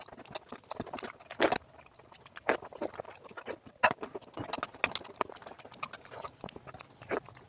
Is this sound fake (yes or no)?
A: no